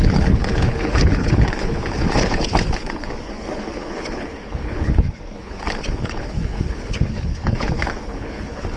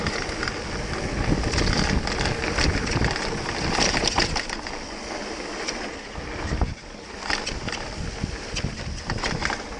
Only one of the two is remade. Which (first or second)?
first